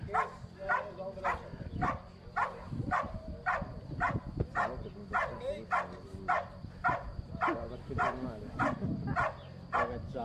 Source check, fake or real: real